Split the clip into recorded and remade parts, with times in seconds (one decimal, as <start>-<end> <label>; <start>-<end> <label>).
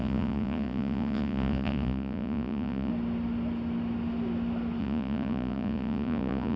0.0-2.9 remade; 2.9-4.8 recorded; 4.8-6.6 remade